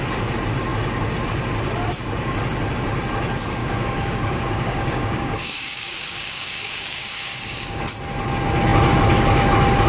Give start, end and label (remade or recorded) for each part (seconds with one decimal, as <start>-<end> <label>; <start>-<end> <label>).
0.0-3.6 recorded; 3.6-7.8 remade; 7.8-9.9 recorded